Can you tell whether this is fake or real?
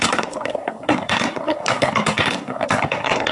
fake